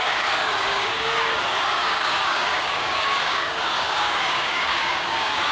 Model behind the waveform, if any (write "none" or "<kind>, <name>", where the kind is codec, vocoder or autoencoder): codec, DAC